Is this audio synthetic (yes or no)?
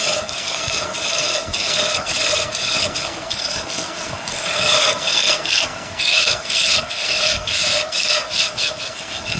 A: yes